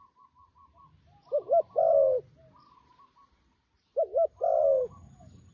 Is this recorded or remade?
recorded